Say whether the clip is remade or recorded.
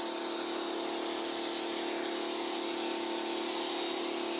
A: recorded